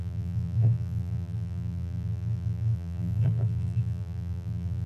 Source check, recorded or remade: remade